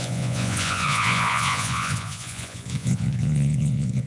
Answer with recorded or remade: remade